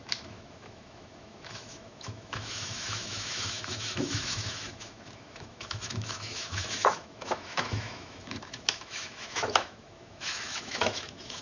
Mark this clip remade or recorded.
remade